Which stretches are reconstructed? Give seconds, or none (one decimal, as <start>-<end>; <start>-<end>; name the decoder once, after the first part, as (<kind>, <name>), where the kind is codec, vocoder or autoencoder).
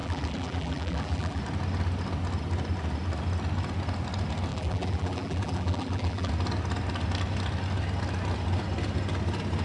0.0-1.4 (vocoder, BigVGAN v2); 4.5-6.3